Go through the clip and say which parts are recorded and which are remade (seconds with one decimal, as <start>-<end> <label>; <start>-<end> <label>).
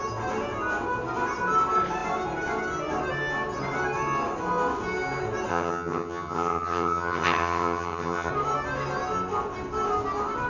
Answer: 0.0-5.5 recorded; 5.5-8.3 remade; 8.3-10.5 recorded